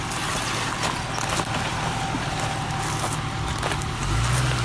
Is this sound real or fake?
real